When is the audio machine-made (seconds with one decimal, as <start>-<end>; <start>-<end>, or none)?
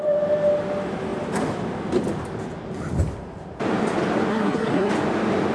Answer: 4.3-4.9